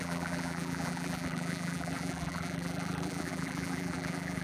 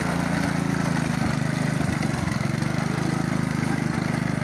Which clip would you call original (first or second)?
second